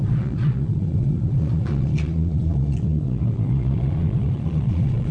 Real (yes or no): no